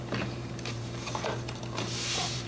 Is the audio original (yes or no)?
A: no